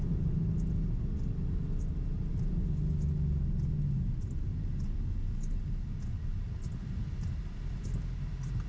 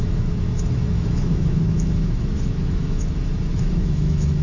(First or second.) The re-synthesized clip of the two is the second